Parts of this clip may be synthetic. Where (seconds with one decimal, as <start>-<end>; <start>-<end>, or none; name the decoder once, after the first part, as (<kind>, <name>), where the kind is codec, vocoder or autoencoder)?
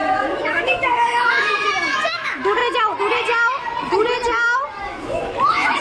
0.0-2.6 (autoencoder, DAC-VAE); 4.8-5.8